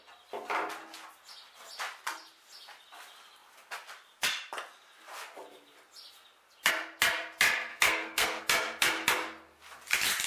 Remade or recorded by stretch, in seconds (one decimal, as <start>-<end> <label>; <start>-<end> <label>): 0.0-7.7 recorded; 7.7-8.4 remade; 8.4-10.3 recorded